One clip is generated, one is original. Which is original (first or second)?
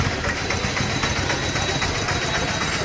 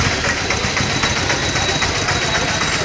first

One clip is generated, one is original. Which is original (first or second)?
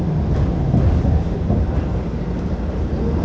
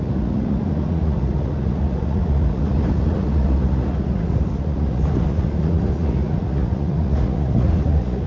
first